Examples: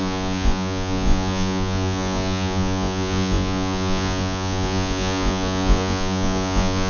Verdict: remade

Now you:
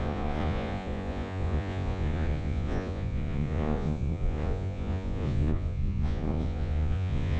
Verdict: remade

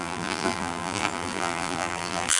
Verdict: remade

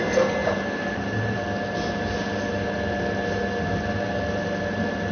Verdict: recorded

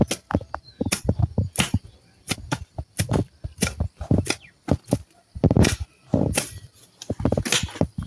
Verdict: recorded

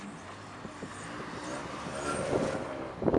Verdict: recorded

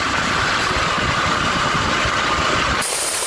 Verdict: remade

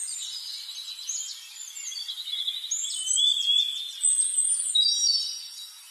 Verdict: recorded